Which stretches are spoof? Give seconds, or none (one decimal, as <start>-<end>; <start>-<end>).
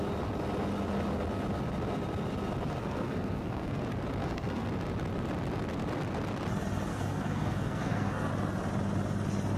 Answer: 2.8-3.8; 4.2-4.7; 6.9-8.3